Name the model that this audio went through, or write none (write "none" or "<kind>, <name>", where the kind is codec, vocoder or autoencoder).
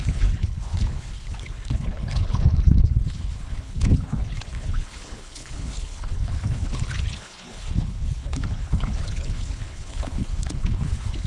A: codec, HILCodec